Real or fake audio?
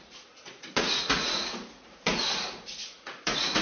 fake